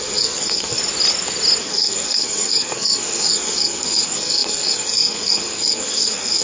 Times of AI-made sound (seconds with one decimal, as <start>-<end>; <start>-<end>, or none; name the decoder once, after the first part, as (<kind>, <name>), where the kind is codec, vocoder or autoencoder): 0.0-0.8 (codec, SNAC); 1.6-6.4

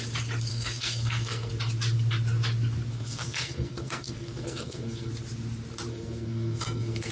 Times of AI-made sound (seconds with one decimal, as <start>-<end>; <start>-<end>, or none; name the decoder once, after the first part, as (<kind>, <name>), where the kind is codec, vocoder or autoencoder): 0.5-1.5 (codec, SNAC); 2.9-5.1; 5.9-7.1

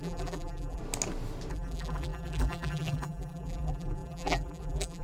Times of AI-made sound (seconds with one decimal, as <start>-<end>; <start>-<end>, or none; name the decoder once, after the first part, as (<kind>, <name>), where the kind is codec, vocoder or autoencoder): 0.0-0.8 (vocoder, BigVGAN v2); 1.5-5.0

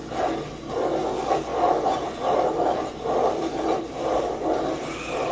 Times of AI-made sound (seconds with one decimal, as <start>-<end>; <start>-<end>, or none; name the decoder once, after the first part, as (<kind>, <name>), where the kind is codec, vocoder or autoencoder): 1.5-3.8 (vocoder, BigVGAN v2)

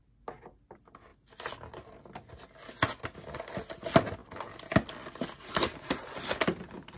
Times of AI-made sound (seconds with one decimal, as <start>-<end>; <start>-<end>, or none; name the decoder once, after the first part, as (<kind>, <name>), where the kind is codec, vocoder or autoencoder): none